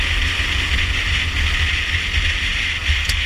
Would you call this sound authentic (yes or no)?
yes